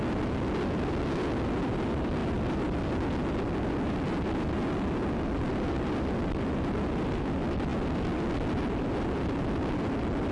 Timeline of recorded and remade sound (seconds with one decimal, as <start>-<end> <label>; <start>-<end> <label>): 0.0-10.3 recorded